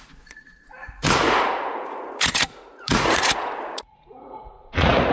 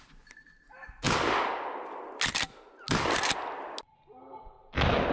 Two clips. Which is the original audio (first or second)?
second